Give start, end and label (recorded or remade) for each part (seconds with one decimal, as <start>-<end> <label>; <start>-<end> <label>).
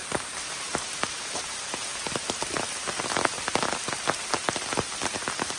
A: 0.0-1.9 remade; 1.9-5.6 recorded